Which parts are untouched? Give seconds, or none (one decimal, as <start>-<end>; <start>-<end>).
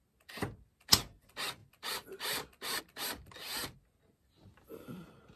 0.0-5.4